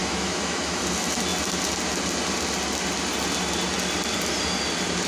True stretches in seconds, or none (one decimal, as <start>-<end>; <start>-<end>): 0.8-5.1